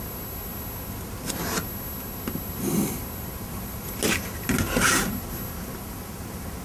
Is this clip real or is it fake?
real